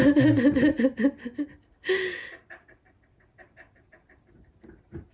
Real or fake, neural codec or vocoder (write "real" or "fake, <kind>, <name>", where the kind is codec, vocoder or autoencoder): real